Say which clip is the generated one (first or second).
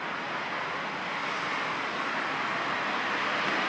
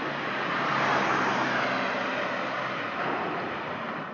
second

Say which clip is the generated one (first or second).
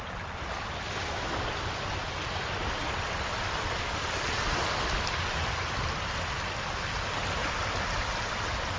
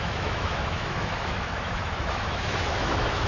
second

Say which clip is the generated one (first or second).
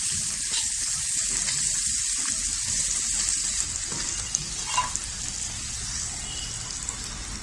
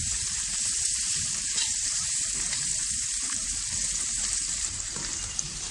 second